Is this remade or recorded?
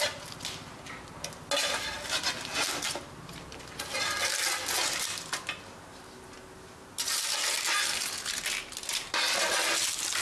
recorded